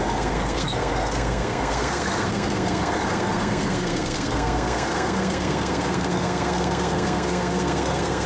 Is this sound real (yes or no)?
no